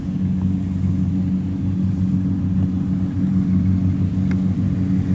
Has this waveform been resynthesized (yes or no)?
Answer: no